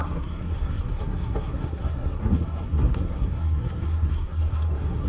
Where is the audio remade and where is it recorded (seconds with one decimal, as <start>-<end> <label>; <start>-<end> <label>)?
0.0-5.1 remade